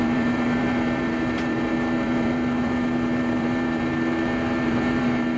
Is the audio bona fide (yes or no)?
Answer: no